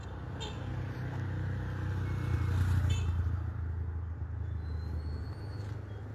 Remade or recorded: recorded